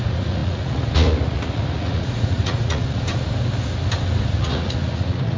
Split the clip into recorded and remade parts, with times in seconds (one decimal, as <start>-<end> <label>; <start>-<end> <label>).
0.0-3.1 remade; 3.1-4.3 recorded; 4.3-5.4 remade